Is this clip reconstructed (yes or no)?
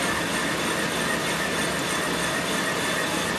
no